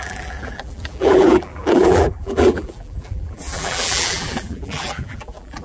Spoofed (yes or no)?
yes